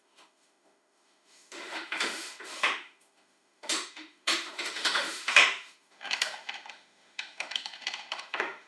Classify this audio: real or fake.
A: fake